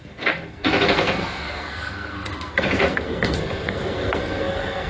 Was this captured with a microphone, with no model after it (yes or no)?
no